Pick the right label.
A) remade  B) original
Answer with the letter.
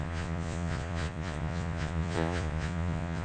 A